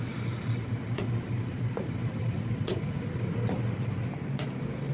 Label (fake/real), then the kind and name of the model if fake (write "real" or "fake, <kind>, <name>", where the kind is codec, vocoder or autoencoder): fake, vocoder, BigVGAN v2